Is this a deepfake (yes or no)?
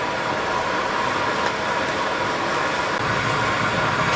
no